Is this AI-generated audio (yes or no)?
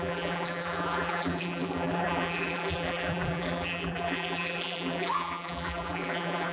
yes